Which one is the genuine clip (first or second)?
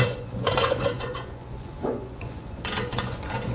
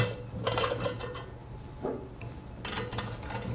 second